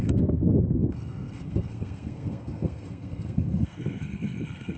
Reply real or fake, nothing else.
fake